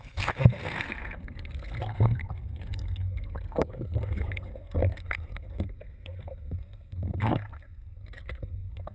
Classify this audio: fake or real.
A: fake